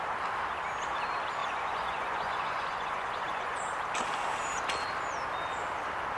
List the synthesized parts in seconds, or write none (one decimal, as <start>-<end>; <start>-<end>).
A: 1.4-3.6